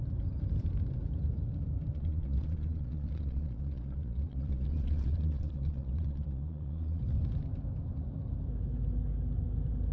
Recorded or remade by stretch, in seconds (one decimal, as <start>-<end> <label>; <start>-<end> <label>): 0.0-1.9 recorded; 1.9-7.0 remade; 7.0-9.9 recorded